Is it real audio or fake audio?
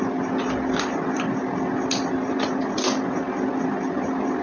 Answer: real